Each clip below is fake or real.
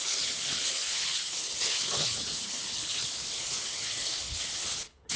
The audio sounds fake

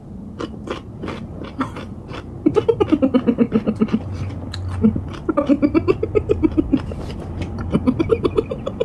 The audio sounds real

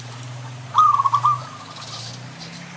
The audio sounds real